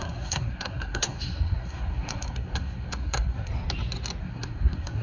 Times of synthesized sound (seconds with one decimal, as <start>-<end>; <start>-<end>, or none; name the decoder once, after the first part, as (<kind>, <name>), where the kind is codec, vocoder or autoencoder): 0.0-3.5 (codec, SNAC); 4.2-5.0